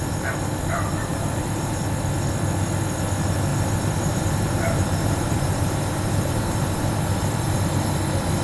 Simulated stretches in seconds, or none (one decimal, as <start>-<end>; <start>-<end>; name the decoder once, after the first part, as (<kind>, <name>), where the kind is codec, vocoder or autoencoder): 1.1-1.8 (vocoder, BigVGAN v2); 3.5-7.6